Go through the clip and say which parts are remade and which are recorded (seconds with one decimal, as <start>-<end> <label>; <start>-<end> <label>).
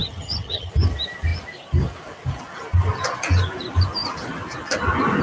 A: 0.0-0.7 remade; 0.7-5.2 recorded